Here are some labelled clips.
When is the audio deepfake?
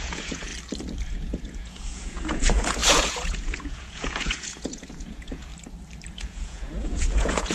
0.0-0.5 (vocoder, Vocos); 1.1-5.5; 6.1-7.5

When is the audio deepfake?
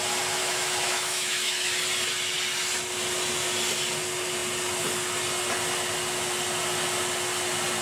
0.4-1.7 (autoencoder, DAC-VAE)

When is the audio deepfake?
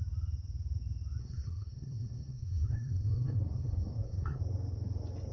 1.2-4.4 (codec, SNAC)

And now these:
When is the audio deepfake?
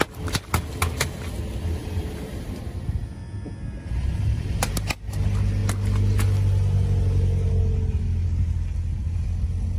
1.8-2.6 (vocoder, BigVGAN v2)